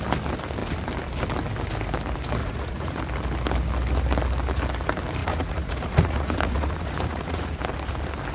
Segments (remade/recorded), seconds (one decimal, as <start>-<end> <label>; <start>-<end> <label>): 0.0-2.4 recorded; 2.4-3.0 remade; 3.0-5.2 recorded; 5.2-7.6 remade; 7.6-8.3 recorded